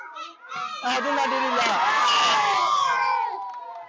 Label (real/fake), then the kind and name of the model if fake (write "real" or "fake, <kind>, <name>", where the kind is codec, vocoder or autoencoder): real